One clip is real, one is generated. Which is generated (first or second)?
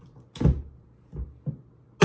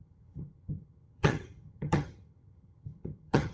second